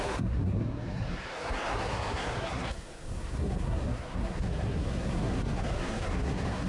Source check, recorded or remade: remade